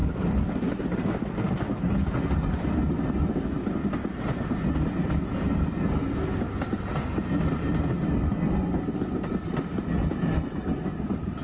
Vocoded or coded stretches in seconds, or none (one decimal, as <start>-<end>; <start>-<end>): 0.0-0.8